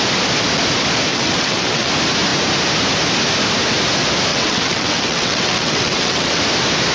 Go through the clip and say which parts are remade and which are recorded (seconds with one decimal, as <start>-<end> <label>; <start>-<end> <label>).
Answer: 0.0-1.1 recorded; 1.1-1.9 remade; 1.9-4.3 recorded; 4.3-6.4 remade; 6.4-6.9 recorded